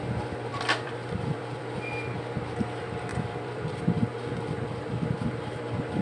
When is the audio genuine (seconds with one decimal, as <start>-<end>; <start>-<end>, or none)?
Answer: 0.0-0.5; 1.9-3.1; 3.8-6.0